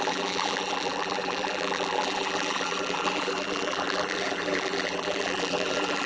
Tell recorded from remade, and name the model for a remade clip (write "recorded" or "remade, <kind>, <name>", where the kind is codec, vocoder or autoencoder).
remade, vocoder, BigVGAN v2